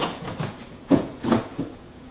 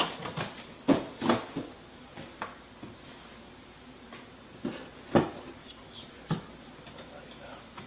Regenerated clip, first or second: first